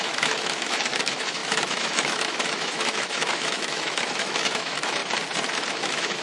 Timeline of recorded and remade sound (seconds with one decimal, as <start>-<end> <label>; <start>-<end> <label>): 0.0-5.0 remade; 5.0-5.7 recorded; 5.7-6.2 remade